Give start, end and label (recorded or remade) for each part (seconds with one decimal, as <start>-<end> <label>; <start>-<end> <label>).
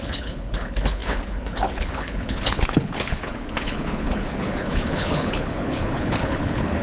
0.0-6.8 remade